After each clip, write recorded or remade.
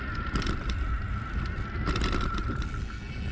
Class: recorded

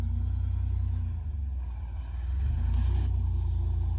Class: recorded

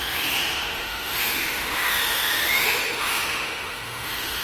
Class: remade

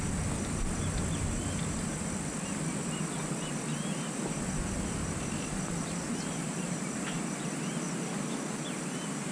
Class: recorded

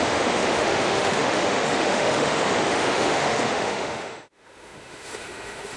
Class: remade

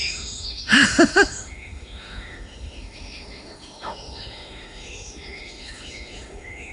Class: remade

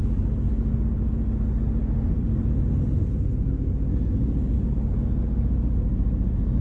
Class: recorded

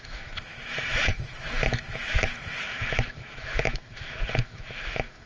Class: remade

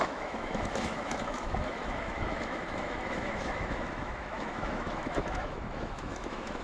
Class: remade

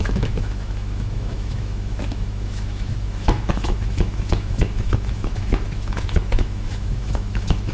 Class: remade